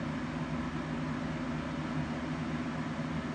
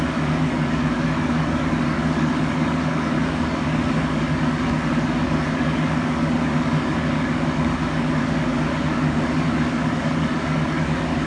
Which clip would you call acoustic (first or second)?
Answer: first